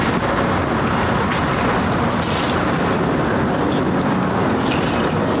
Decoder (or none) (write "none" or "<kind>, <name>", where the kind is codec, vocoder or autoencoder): none